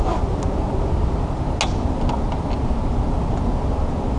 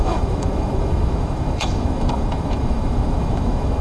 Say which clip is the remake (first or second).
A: second